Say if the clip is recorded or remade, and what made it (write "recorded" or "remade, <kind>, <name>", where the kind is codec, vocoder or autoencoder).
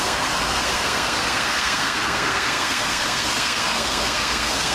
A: remade, codec, SNAC